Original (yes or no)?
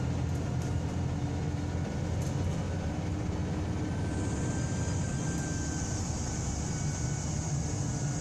yes